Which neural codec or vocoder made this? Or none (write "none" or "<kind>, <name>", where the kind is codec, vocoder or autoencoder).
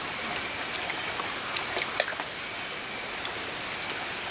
none